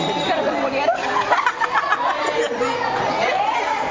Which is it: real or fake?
real